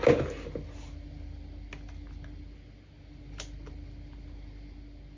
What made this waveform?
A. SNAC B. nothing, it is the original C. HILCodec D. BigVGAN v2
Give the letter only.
B